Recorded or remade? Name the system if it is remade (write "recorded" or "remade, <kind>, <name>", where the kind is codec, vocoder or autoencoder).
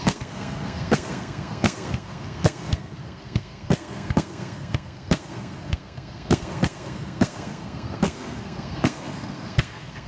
remade, codec, SNAC